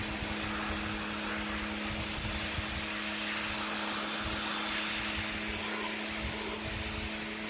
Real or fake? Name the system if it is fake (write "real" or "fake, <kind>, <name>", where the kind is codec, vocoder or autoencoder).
real